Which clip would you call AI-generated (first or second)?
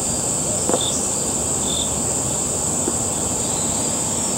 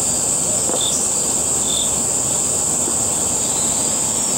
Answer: first